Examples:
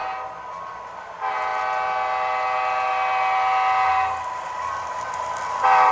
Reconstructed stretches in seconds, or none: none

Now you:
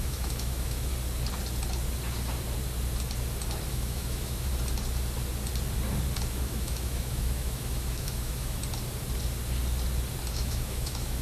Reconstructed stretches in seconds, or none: 0.0-0.9; 3.7-4.5; 6.2-8.6; 10.3-11.2

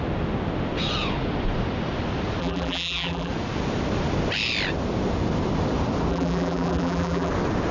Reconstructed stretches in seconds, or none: 2.4-3.3; 6.1-7.3

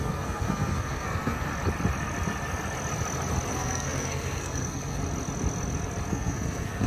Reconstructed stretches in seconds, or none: 0.0-1.5; 3.5-5.0; 6.1-6.9

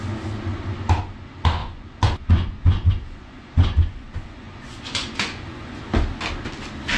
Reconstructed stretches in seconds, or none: 1.6-5.8

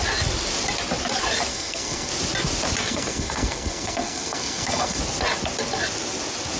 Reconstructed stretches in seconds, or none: 1.5-2.1; 2.8-5.0

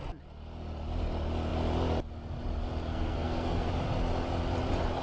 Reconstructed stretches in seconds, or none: 2.9-3.7

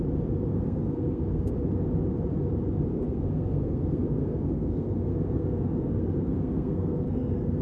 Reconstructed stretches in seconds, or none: 0.5-1.5; 2.9-7.6